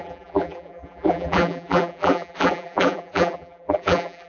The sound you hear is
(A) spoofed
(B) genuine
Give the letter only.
A